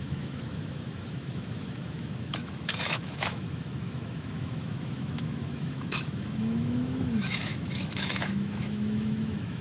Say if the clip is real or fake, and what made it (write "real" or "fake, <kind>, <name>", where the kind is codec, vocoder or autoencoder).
fake, autoencoder, DAC-VAE